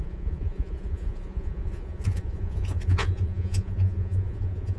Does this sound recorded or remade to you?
remade